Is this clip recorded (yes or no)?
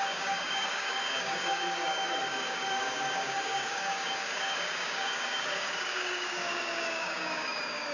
no